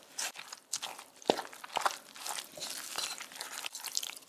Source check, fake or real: real